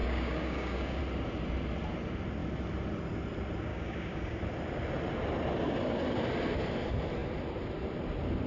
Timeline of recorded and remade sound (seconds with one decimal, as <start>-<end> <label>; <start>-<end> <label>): 0.0-1.0 remade; 1.0-3.7 recorded; 3.7-4.4 remade; 4.4-8.5 recorded